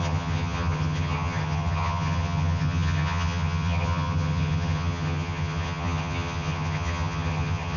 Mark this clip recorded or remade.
remade